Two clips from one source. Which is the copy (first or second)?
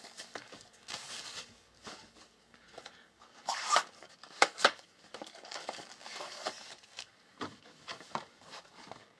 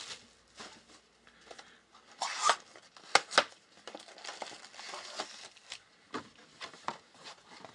first